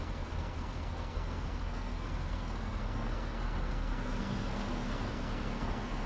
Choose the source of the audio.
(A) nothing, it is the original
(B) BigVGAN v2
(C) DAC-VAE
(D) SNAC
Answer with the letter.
D